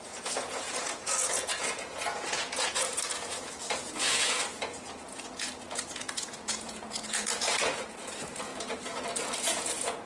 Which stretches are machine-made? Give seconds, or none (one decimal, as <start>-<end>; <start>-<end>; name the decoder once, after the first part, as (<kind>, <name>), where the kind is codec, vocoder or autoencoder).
0.0-8.5 (vocoder, Vocos); 9.4-10.1